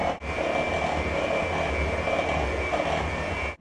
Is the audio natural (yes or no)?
yes